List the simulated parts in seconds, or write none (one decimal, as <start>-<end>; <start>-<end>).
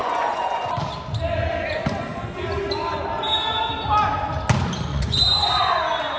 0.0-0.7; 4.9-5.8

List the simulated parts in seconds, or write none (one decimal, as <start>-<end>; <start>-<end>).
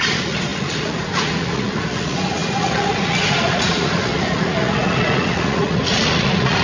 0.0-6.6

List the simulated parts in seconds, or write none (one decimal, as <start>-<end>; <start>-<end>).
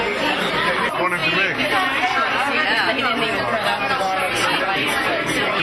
none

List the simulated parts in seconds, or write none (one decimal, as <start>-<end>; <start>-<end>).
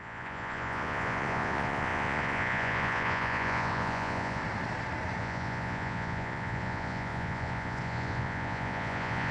0.0-4.4; 5.2-9.3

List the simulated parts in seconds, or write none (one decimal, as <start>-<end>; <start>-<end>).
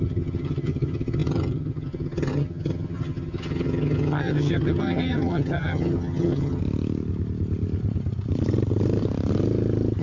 0.0-6.6